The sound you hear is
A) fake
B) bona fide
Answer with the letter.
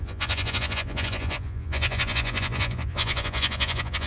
A